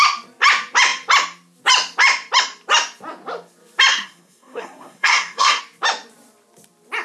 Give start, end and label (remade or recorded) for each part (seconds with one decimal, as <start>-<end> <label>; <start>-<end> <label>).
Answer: 0.0-3.9 recorded; 3.9-5.6 remade; 5.6-7.0 recorded